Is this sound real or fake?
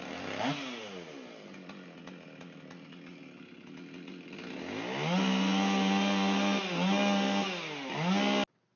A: real